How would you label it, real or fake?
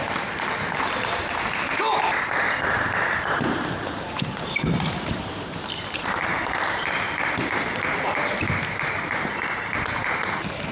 fake